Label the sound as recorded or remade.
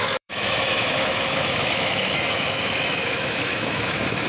remade